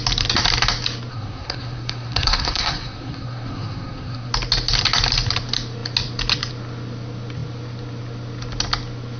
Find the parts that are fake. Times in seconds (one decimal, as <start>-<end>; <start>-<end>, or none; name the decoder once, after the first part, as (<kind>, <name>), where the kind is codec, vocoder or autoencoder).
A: 1.1-4.3 (codec, SNAC)